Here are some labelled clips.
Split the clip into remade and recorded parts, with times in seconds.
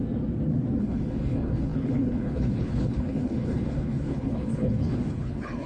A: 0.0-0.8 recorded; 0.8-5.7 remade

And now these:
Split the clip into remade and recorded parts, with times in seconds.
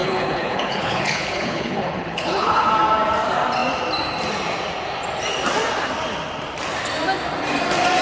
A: 0.0-2.7 remade; 2.7-8.0 recorded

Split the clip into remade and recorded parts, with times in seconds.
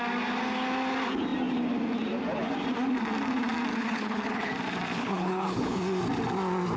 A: 0.0-3.7 recorded; 3.7-4.5 remade; 4.5-5.0 recorded; 5.0-5.8 remade; 5.8-6.8 recorded